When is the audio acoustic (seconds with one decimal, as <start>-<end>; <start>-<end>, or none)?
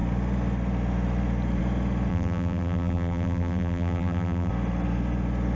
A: 0.0-2.1; 4.5-5.5